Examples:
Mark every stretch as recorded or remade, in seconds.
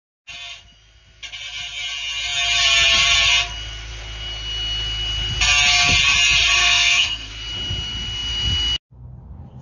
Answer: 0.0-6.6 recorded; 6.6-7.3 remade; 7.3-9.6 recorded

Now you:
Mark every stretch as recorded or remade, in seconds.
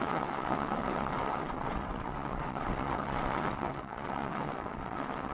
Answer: 0.0-5.3 remade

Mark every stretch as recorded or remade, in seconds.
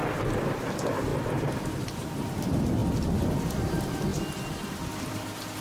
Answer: 0.0-0.6 recorded; 0.6-1.1 remade; 1.1-1.7 recorded; 1.7-4.1 remade; 4.1-5.1 recorded; 5.1-5.6 remade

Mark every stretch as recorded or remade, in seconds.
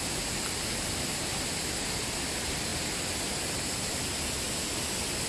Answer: 0.0-5.3 recorded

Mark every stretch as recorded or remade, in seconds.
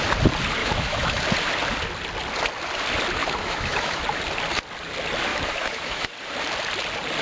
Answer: 0.0-0.6 recorded; 0.6-1.2 remade; 1.2-3.2 recorded; 3.2-4.0 remade; 4.0-5.3 recorded; 5.3-6.1 remade; 6.1-7.2 recorded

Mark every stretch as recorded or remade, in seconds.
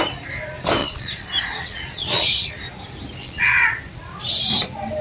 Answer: 0.0-0.8 recorded; 0.8-2.5 remade; 2.5-3.2 recorded; 3.2-3.8 remade; 3.8-5.0 recorded